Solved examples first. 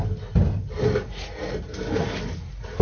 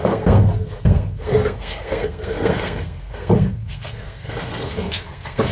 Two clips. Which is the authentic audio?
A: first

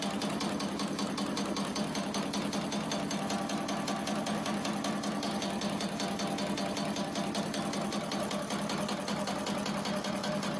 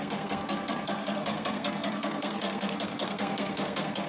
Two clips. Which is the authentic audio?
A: first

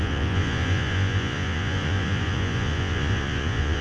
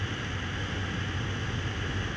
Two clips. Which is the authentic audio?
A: second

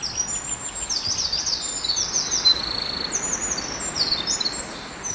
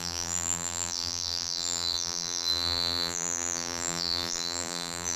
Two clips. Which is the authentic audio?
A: first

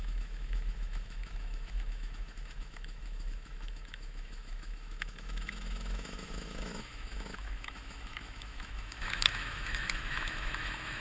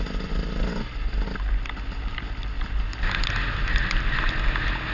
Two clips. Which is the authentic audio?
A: second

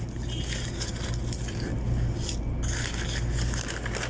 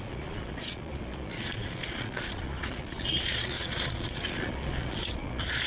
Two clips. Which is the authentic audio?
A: first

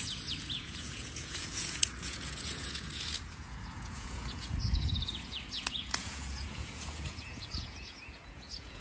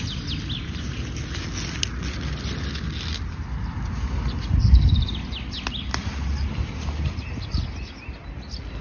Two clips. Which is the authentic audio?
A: second